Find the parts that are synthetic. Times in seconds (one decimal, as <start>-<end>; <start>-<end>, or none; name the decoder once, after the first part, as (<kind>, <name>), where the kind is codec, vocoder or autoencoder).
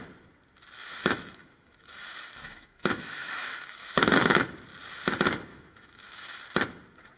0.8-4.4 (autoencoder, DAC-VAE); 5.5-6.4